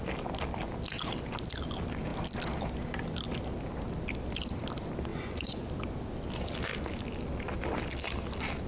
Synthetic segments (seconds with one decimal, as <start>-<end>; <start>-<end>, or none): 5.1-5.7